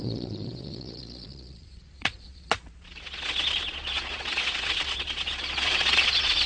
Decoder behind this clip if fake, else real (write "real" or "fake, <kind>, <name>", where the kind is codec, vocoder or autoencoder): fake, vocoder, Vocos